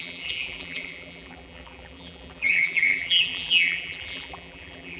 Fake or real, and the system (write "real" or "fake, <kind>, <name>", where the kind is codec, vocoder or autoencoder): fake, vocoder, BigVGAN v2